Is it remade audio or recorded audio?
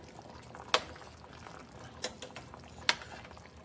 recorded